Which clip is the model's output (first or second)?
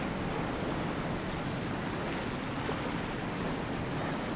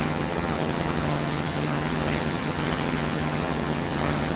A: second